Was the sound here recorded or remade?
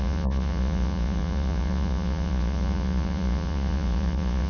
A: remade